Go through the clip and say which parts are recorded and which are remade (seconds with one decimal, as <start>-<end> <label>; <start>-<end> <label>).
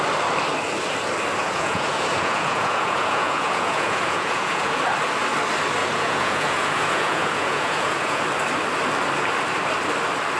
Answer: 0.0-1.4 recorded; 1.4-4.8 remade; 4.8-5.8 recorded; 5.8-8.2 remade; 8.2-10.4 recorded